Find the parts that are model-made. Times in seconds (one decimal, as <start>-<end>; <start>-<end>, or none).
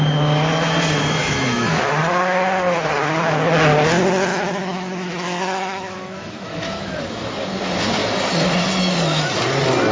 1.2-1.8; 4.3-7.0